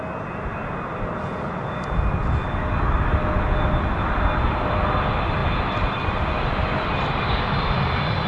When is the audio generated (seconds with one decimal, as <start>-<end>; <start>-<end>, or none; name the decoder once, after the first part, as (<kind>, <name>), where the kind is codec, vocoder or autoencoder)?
5.4-7.4 (vocoder, BigVGAN v2)